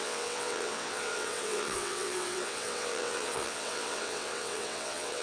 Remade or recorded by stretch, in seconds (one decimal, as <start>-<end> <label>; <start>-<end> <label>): 0.0-5.2 remade